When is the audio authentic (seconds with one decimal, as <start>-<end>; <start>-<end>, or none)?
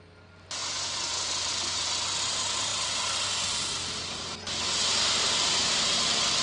0.0-6.4